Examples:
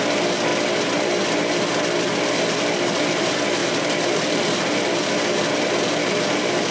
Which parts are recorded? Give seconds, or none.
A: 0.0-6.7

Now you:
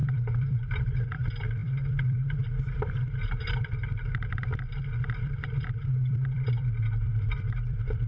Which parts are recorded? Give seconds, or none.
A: none

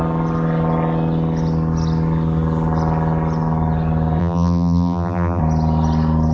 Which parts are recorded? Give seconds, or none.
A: 0.0-4.2; 5.4-6.3

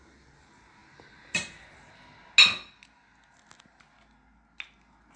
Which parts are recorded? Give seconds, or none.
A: 0.0-0.8; 1.6-5.2

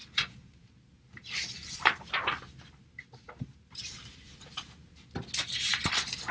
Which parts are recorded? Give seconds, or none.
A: 0.7-1.1; 4.9-6.3